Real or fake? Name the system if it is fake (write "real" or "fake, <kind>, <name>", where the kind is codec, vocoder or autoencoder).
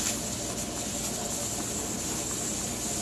real